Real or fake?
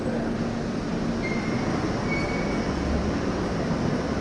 real